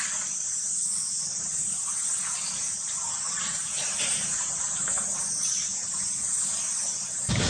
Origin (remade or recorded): remade